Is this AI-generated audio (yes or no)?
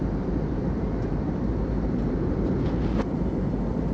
yes